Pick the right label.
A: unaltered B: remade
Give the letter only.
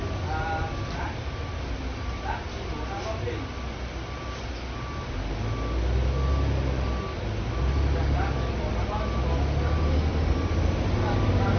A